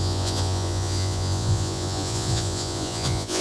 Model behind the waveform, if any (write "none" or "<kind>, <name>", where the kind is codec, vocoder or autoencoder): vocoder, Vocos